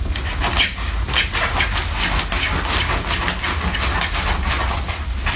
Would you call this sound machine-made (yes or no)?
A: no